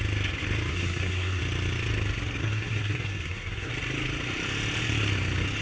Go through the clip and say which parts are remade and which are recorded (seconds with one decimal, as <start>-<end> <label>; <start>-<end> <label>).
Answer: 0.0-0.7 recorded; 0.7-1.4 remade; 1.4-2.4 recorded; 2.4-3.7 remade; 3.7-5.6 recorded